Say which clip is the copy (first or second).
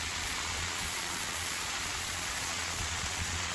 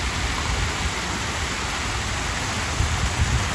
first